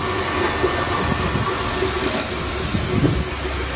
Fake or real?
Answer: real